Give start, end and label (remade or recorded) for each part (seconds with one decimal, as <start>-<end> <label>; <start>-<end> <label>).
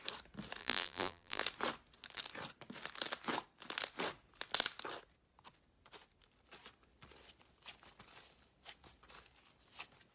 0.0-0.6 recorded; 0.6-1.4 remade; 1.4-10.1 recorded